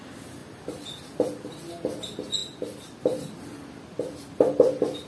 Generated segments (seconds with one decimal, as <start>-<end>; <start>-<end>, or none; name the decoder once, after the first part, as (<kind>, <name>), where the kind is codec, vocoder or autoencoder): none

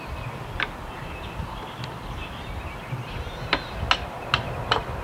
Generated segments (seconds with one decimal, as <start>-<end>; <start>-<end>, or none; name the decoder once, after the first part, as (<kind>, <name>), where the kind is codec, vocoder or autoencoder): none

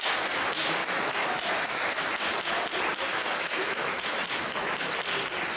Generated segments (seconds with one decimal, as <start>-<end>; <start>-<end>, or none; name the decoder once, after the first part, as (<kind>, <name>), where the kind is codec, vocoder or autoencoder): 0.8-2.0 (autoencoder, DAC-VAE); 3.1-4.2

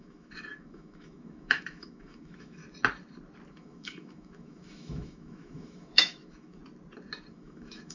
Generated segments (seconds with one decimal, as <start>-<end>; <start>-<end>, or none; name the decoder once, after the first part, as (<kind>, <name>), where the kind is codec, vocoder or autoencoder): 0.0-2.6 (autoencoder, DAC-VAE); 3.5-6.6; 7.3-7.9

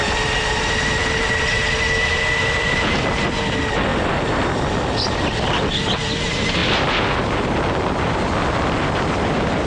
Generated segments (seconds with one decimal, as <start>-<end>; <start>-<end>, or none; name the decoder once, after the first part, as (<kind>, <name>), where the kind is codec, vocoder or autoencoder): none

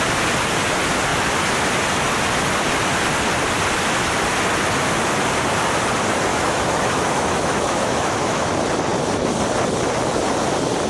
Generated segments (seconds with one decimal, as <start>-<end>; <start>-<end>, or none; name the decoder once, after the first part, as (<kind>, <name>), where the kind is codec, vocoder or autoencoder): 6.3-8.5 (autoencoder, DAC-VAE)